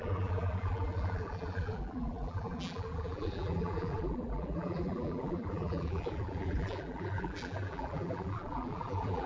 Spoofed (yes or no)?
yes